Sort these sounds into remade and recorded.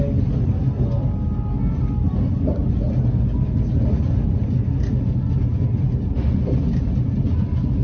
recorded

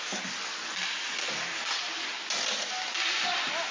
recorded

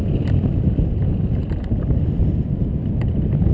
recorded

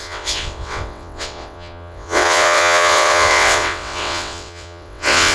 remade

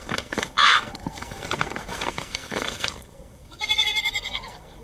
remade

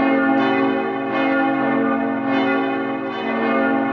recorded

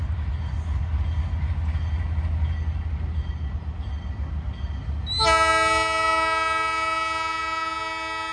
recorded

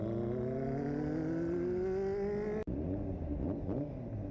recorded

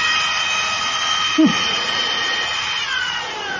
remade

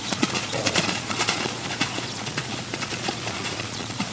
remade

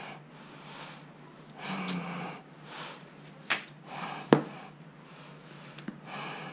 recorded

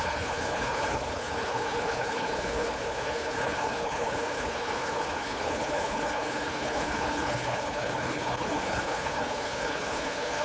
remade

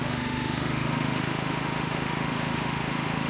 remade